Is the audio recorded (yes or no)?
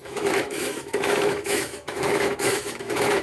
no